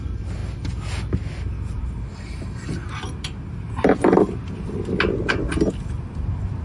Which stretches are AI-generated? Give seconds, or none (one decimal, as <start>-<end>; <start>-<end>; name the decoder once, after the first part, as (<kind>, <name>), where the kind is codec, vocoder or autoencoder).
none